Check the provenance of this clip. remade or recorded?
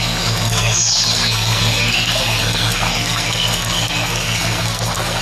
remade